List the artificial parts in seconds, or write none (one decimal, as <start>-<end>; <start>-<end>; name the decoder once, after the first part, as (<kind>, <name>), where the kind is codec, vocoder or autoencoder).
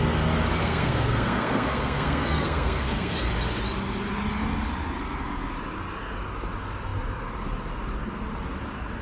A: 0.6-3.3 (codec, SNAC)